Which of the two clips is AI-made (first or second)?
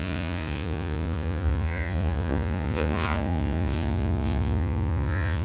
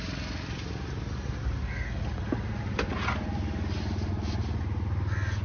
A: first